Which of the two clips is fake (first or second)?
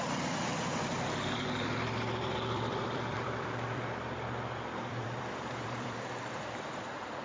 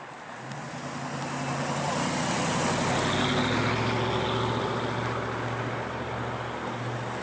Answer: first